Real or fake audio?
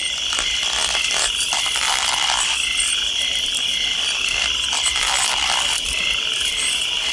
real